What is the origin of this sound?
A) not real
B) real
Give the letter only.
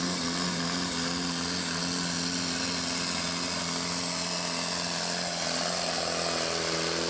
B